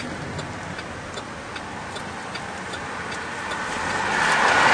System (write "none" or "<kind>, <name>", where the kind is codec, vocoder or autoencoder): none